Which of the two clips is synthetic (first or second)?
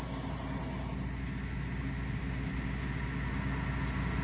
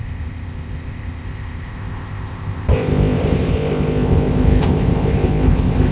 second